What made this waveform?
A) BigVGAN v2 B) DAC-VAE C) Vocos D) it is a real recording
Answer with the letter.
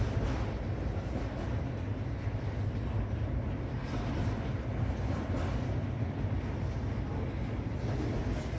D